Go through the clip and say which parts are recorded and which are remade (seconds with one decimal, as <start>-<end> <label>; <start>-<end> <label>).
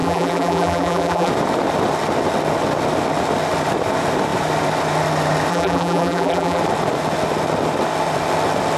0.0-1.3 remade; 1.3-5.5 recorded; 5.5-6.6 remade; 6.6-8.8 recorded